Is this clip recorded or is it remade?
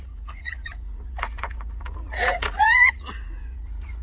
remade